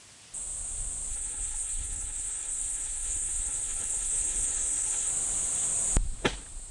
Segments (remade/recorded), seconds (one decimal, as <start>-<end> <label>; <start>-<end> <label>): 0.0-1.1 recorded; 1.1-5.1 remade; 5.1-6.7 recorded